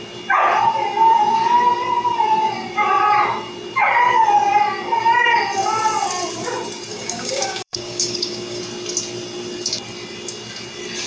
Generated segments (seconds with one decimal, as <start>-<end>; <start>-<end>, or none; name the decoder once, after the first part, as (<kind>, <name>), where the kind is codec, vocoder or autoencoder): 6.9-8.6 (codec, DAC)